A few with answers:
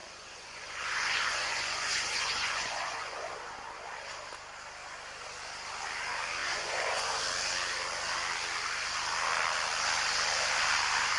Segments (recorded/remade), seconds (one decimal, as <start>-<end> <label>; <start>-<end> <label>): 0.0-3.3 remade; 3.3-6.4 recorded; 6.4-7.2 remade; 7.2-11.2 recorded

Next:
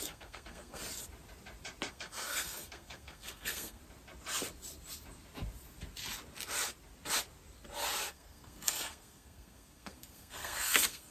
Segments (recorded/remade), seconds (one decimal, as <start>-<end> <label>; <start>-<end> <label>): 0.0-0.8 remade; 0.8-1.9 recorded; 1.9-3.8 remade; 3.8-8.1 recorded; 8.1-11.1 remade

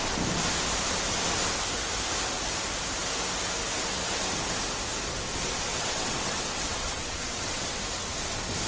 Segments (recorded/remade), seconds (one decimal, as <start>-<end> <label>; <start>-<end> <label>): 0.0-5.7 recorded; 5.7-7.8 remade; 7.8-8.7 recorded

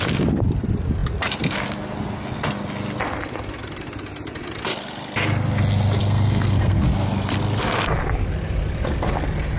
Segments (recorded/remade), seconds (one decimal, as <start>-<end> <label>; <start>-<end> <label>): 0.0-6.0 recorded; 6.0-6.8 remade; 6.8-9.6 recorded

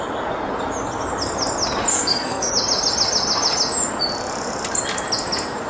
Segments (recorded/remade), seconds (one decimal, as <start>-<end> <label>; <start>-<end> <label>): 0.0-1.9 recorded; 1.9-2.5 remade; 2.5-5.7 recorded

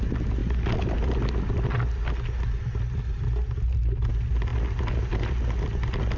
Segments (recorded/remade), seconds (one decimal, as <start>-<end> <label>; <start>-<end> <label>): 0.0-6.2 recorded

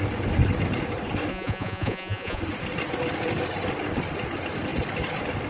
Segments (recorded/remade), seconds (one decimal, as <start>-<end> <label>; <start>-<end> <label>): 0.0-1.3 recorded; 1.3-2.4 remade; 2.4-5.5 recorded

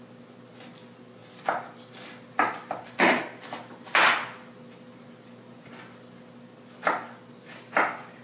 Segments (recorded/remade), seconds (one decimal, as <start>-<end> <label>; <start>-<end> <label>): 0.0-8.2 recorded